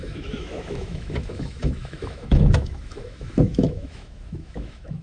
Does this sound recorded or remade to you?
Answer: remade